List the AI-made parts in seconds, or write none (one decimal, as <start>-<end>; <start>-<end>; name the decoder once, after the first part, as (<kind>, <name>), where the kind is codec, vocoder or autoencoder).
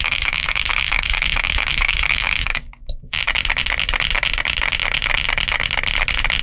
0.0-3.2 (codec, DAC)